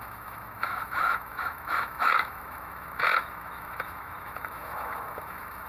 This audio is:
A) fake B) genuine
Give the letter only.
A